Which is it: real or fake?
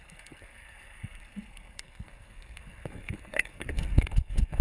fake